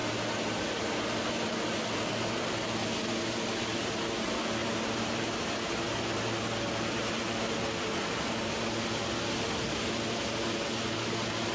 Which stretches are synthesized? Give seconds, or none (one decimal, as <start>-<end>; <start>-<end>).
none